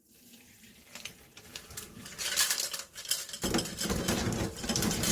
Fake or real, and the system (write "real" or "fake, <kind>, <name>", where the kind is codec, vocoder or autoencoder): real